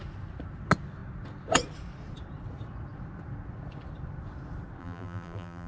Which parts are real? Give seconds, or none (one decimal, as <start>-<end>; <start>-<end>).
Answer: 0.0-4.8